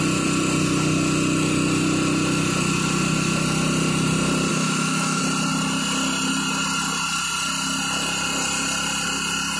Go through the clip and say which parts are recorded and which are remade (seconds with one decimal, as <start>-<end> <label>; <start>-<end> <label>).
0.0-4.5 recorded; 4.5-5.2 remade; 5.2-9.6 recorded